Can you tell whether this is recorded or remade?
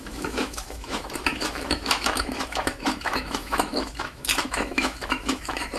remade